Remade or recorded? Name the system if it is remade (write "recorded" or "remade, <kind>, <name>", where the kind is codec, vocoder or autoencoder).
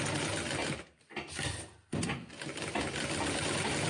recorded